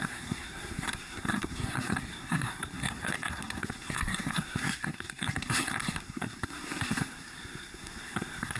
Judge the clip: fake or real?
fake